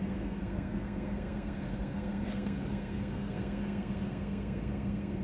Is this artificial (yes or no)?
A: yes